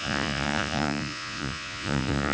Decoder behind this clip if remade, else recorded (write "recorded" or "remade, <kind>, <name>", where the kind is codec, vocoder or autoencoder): remade, vocoder, Vocos